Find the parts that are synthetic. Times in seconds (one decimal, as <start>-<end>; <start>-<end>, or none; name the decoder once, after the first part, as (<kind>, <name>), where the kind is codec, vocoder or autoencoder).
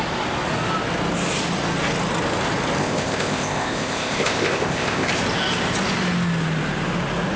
2.8-5.1 (codec, ZipCodec)